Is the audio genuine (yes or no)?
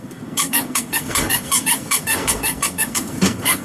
no